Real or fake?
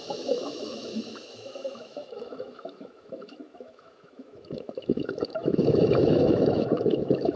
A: fake